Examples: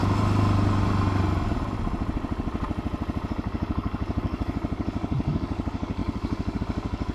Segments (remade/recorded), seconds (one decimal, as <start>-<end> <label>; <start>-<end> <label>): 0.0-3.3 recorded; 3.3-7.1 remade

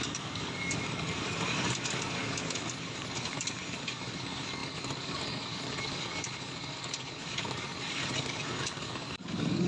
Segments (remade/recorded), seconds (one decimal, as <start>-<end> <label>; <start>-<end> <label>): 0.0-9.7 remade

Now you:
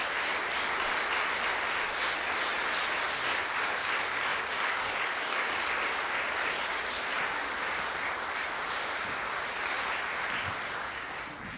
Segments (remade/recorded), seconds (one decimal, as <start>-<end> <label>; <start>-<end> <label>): 0.0-4.3 recorded; 4.3-5.6 remade; 5.6-11.6 recorded

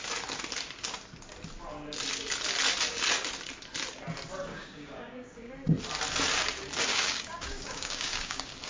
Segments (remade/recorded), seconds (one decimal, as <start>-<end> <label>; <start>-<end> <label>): 0.0-4.5 recorded; 4.5-5.5 remade; 5.5-6.9 recorded; 6.9-8.7 remade

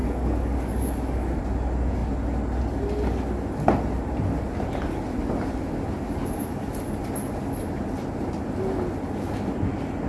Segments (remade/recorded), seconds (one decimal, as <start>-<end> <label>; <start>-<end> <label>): 0.0-1.4 remade; 1.4-10.1 recorded

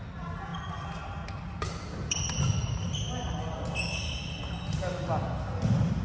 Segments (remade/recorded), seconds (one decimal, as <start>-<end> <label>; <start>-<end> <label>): 0.0-6.0 recorded

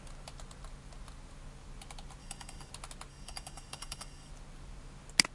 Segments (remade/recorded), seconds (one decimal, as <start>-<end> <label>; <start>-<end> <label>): 0.0-2.2 recorded; 2.2-2.7 remade; 2.7-3.1 recorded; 3.1-4.3 remade; 4.3-5.3 recorded

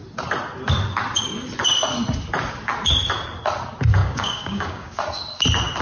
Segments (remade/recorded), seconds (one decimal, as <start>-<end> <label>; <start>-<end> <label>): 0.0-4.0 recorded; 4.0-5.0 remade; 5.0-5.8 recorded